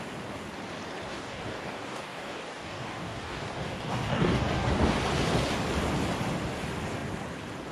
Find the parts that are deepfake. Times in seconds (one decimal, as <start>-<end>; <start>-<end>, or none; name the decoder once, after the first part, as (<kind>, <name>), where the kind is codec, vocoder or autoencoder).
1.1-4.7 (codec, DAC)